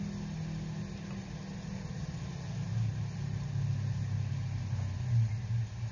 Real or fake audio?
real